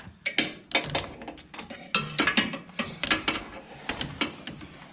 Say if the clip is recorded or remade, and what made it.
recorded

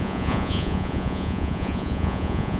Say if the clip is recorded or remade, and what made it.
remade, vocoder, Vocos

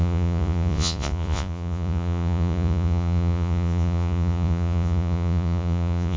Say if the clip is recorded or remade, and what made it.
remade, vocoder, Vocos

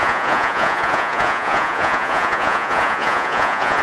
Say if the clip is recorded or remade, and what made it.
remade, vocoder, Vocos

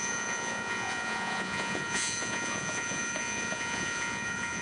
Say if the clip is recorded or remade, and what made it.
remade, vocoder, Vocos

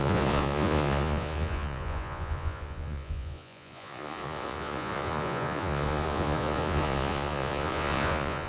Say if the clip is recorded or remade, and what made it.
remade, vocoder, Vocos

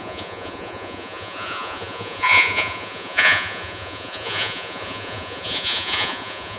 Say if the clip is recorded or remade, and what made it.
remade, vocoder, Vocos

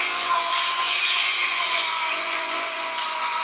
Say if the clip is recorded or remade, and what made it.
remade, vocoder, Vocos